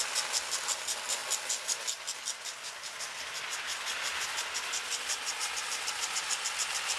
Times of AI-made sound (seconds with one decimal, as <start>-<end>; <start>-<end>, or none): none